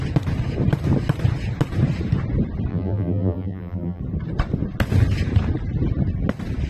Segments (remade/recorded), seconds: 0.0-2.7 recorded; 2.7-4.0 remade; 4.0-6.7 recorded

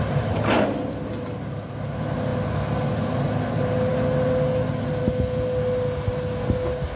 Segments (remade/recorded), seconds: 0.0-7.0 recorded

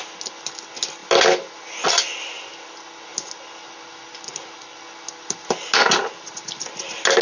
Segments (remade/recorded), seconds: 0.0-7.2 recorded

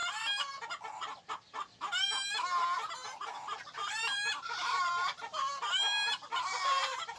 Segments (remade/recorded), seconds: 0.0-3.0 recorded; 3.0-5.7 remade; 5.7-6.3 recorded; 6.3-7.2 remade

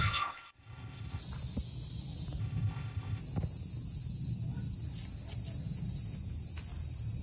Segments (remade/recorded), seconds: 0.0-1.2 remade; 1.2-2.4 recorded; 2.4-3.2 remade; 3.2-7.2 recorded

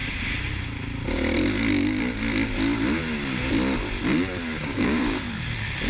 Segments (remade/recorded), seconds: 0.0-4.6 recorded; 4.6-5.3 remade; 5.3-5.9 recorded